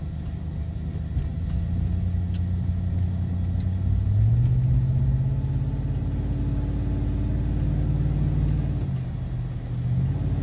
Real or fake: real